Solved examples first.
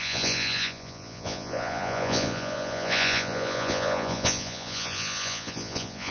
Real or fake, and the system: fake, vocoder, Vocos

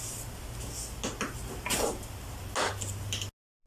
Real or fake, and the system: real